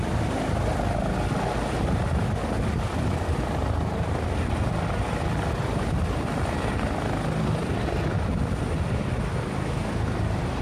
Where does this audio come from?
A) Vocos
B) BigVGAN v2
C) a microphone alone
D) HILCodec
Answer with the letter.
C